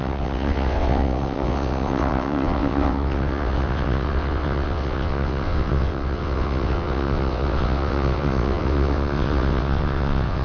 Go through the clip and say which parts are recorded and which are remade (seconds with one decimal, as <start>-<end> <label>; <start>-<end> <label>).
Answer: 0.0-10.4 remade

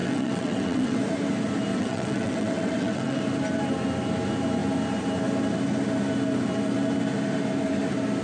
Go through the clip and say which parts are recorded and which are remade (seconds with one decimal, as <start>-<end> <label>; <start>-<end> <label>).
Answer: 0.0-1.0 remade; 1.0-1.7 recorded; 1.7-3.2 remade; 3.2-8.2 recorded

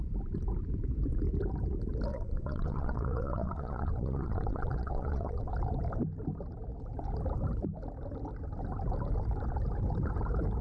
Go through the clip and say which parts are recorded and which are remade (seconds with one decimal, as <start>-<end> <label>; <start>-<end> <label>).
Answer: 0.0-2.1 recorded; 2.1-5.5 remade; 5.5-10.6 recorded